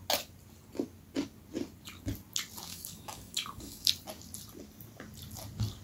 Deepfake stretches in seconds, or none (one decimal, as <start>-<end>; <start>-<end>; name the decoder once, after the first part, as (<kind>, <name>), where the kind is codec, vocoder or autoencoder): 2.7-3.9 (codec, DAC)